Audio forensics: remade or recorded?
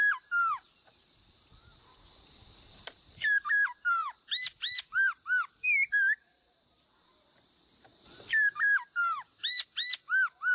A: remade